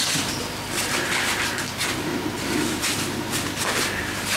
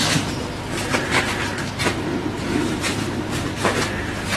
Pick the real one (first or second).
first